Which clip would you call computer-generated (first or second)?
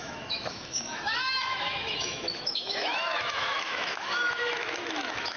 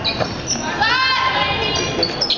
first